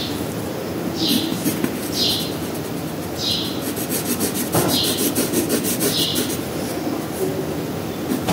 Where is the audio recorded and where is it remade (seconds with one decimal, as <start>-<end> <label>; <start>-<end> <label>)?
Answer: 0.0-1.3 recorded; 1.3-2.2 remade; 2.2-8.3 recorded